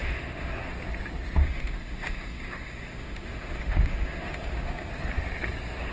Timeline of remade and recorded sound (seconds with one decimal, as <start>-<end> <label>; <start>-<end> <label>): 0.0-0.5 remade; 0.5-1.4 recorded; 1.4-4.9 remade; 4.9-5.9 recorded